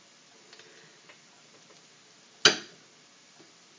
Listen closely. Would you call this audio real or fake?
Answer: real